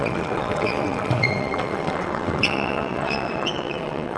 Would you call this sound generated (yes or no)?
yes